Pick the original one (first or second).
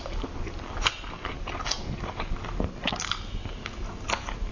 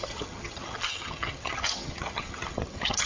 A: first